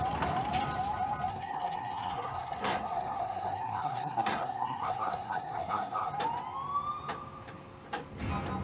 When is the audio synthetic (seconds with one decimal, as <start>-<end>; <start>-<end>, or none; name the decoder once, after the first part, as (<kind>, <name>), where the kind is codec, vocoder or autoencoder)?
1.3-6.1 (codec, SNAC)